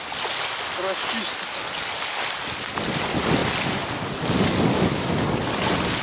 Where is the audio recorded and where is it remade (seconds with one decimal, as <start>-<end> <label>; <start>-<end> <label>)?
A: 0.0-6.0 recorded